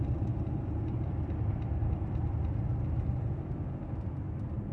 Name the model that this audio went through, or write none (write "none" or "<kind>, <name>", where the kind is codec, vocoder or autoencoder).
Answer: none